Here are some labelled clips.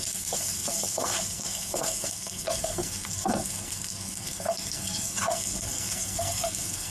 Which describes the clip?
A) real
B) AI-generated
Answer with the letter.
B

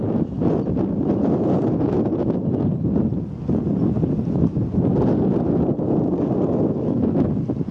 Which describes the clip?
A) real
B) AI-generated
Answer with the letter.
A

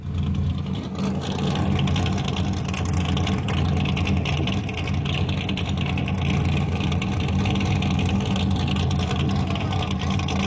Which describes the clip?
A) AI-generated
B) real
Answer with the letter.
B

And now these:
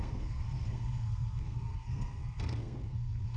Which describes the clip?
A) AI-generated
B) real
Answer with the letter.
A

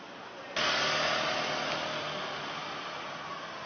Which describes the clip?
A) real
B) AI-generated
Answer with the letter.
A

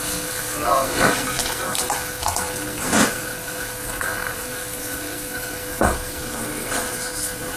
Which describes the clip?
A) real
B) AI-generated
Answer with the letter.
B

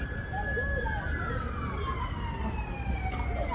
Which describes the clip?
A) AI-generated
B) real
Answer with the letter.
B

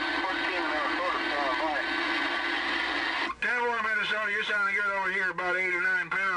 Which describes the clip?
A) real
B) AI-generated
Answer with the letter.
A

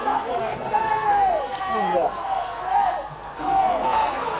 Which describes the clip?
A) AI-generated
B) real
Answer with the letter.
A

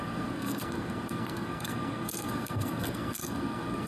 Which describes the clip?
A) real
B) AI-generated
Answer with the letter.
B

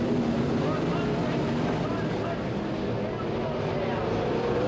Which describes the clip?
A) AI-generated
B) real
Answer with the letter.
B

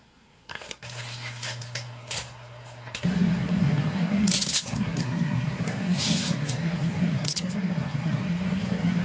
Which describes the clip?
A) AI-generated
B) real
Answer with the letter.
A